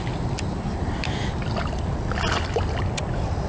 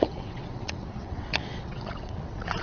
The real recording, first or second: first